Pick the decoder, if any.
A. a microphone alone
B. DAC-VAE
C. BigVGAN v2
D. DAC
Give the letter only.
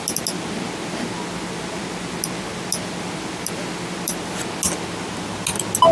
A